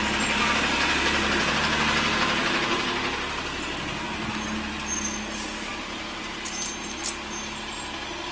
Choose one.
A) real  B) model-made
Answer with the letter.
A